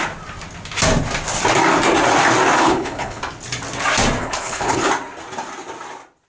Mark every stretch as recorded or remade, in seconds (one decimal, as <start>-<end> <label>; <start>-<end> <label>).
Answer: 0.0-2.6 recorded; 2.6-3.2 remade; 3.2-4.2 recorded; 4.2-4.9 remade; 4.9-6.3 recorded